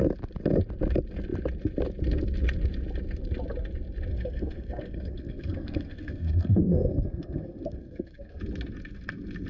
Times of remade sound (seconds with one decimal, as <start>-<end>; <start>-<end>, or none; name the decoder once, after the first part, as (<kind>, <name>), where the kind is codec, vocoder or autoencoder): 4.1-8.4 (codec, SNAC)